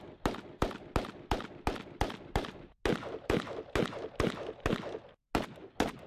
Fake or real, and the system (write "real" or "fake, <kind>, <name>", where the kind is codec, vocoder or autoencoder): real